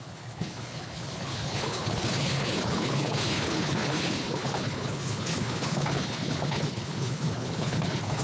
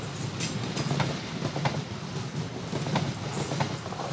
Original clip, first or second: second